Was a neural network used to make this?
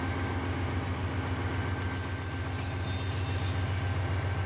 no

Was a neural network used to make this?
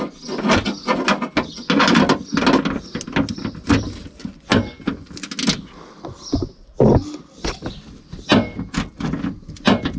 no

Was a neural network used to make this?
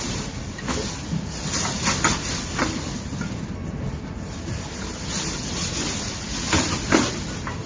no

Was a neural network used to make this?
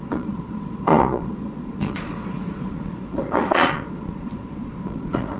yes